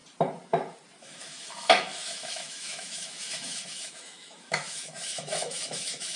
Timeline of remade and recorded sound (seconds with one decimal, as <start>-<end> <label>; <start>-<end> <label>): 0.0-1.0 recorded; 1.0-6.2 remade